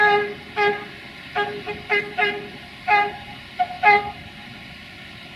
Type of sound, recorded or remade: recorded